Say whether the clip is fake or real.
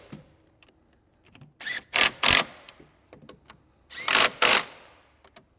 fake